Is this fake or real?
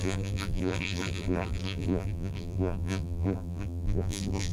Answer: fake